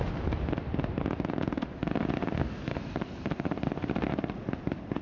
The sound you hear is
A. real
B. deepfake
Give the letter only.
A